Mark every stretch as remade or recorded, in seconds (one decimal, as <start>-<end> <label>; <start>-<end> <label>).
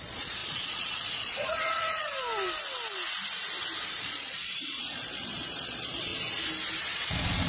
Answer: 0.0-2.1 remade; 2.1-4.0 recorded; 4.0-6.1 remade; 6.1-6.8 recorded; 6.8-7.5 remade